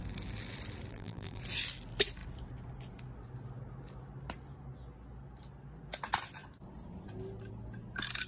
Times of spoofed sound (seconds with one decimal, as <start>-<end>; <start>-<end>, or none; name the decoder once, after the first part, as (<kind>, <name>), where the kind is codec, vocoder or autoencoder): 0.9-1.4 (vocoder, BigVGAN v2)